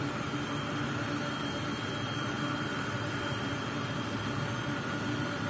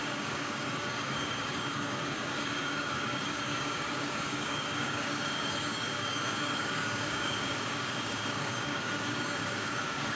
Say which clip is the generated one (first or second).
second